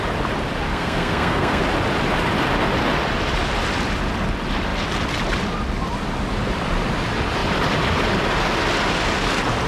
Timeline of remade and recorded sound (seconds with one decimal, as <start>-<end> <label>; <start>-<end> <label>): 0.0-0.7 recorded; 0.7-1.6 remade; 1.6-9.7 recorded